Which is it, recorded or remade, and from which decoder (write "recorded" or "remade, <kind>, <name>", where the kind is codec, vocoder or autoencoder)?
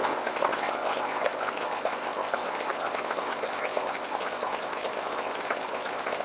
remade, codec, ZipCodec